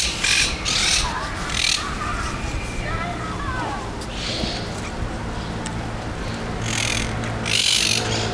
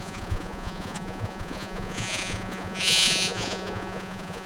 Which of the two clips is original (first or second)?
first